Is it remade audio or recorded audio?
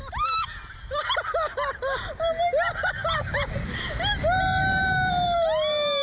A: recorded